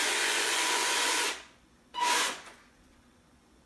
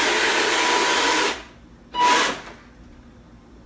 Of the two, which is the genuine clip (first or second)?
second